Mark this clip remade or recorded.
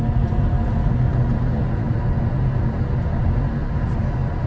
recorded